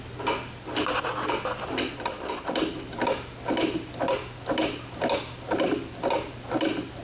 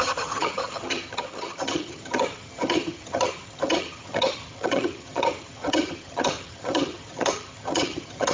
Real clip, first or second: first